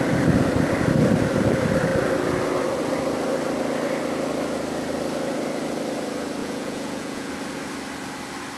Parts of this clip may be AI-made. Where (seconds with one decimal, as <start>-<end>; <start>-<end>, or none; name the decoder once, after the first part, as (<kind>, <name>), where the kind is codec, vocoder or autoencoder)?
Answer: 6.4-7.3 (vocoder, Vocos)